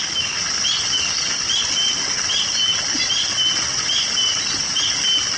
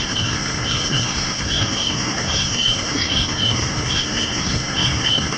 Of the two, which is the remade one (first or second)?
second